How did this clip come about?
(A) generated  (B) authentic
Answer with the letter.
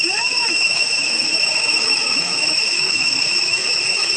A